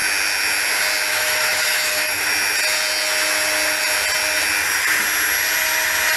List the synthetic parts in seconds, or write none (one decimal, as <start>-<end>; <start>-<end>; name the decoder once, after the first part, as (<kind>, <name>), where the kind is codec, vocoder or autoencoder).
1.1-2.3 (autoencoder, DAC-VAE)